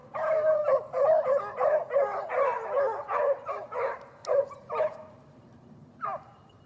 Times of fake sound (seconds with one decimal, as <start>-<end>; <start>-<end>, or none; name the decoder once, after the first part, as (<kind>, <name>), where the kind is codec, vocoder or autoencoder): 3.2-4.2 (vocoder, BigVGAN v2); 4.8-6.7